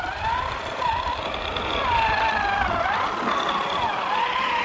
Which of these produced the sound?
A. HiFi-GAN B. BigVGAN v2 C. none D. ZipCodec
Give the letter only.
C